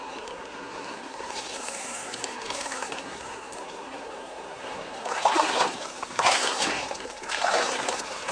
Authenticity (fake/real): fake